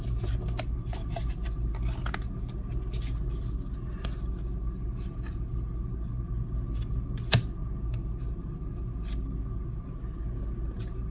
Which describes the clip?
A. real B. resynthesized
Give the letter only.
A